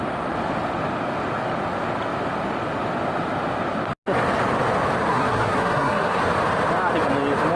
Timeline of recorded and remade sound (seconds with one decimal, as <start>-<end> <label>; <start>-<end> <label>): 0.0-5.1 recorded; 5.1-6.2 remade; 6.2-7.6 recorded